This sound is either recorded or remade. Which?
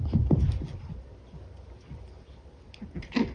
recorded